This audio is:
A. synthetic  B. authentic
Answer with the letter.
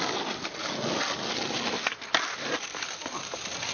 B